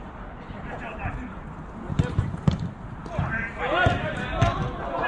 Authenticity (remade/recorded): recorded